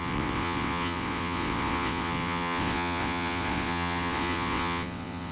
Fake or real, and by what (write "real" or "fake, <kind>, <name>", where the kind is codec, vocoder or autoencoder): fake, vocoder, WaveNeXt